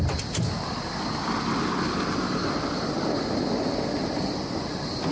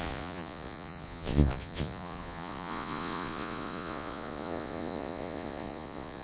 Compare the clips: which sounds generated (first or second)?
second